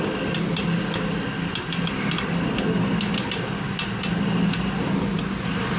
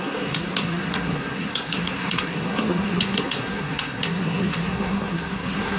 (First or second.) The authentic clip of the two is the first